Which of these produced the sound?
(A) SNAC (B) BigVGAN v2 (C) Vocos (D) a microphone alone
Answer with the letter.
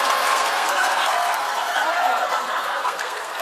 A